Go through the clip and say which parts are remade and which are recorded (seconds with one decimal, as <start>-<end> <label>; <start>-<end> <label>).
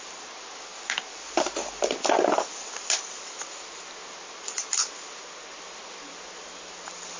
0.0-7.2 recorded